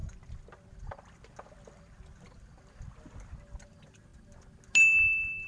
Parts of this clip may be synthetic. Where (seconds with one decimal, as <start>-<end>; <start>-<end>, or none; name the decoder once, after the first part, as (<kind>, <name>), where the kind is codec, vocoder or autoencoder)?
none